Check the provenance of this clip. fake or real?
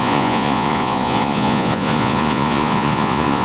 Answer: fake